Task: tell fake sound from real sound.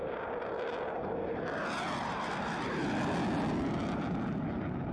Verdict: real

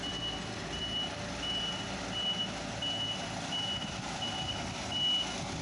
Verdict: real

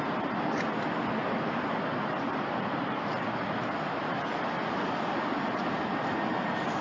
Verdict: real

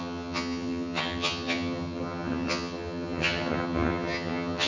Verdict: fake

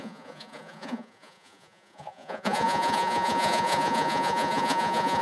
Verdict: fake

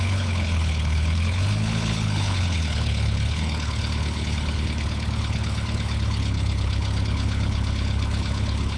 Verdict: fake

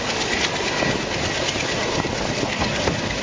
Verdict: real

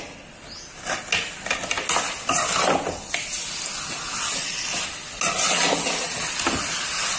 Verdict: real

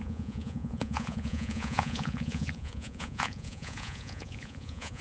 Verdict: fake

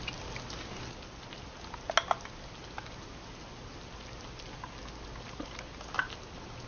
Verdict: real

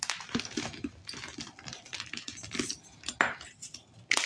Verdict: real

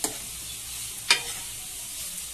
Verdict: real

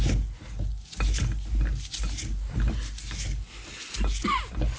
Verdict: real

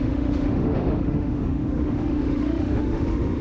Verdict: fake